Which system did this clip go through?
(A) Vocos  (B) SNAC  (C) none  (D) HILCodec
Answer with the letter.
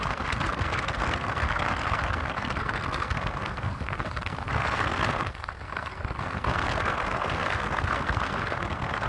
B